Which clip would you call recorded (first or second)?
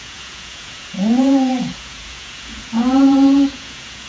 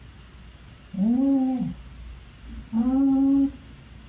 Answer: second